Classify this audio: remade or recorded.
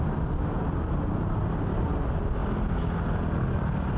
recorded